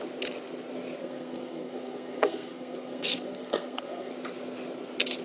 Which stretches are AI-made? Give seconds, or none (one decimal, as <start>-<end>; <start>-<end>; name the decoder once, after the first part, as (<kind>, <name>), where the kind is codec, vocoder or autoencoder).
1.0-4.1 (codec, SNAC)